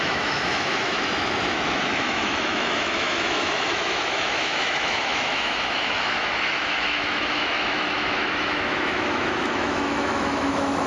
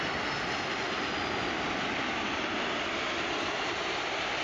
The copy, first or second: first